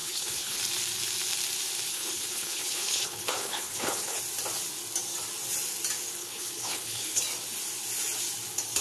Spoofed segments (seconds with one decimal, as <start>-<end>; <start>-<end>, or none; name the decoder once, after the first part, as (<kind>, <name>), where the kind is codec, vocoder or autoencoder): 0.0-0.6 (codec, HILCodec); 1.9-4.2; 6.2-7.2

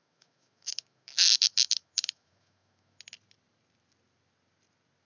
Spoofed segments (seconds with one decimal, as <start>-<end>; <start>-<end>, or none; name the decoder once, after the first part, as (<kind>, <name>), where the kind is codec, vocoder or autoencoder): 0.0-3.0 (autoencoder, DAC-VAE)

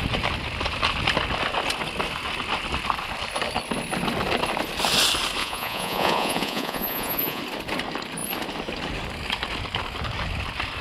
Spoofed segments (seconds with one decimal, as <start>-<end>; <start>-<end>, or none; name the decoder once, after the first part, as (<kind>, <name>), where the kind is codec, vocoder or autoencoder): 5.4-7.4 (vocoder, Vocos)